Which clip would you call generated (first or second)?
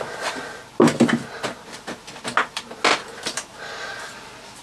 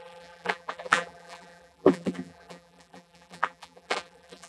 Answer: second